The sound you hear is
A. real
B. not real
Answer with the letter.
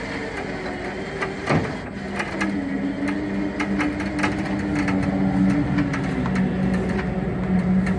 A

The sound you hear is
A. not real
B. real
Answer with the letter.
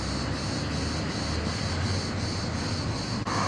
B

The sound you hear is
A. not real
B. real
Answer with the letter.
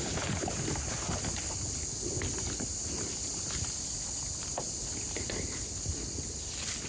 B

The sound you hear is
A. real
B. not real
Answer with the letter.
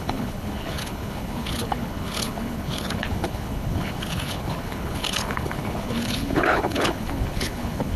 B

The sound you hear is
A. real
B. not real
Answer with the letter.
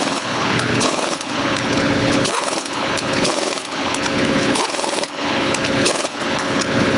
B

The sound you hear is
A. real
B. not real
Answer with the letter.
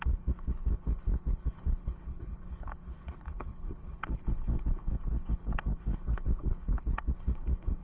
B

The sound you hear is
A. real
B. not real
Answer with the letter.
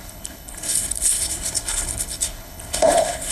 B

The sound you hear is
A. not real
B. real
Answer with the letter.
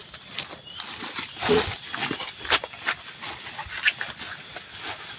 B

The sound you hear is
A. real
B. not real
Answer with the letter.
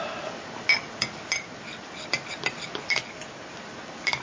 A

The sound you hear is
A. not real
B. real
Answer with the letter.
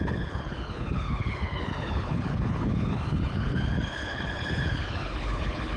A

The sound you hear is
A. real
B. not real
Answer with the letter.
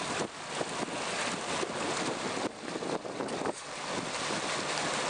A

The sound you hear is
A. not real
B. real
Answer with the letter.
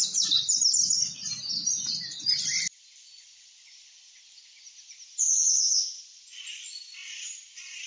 B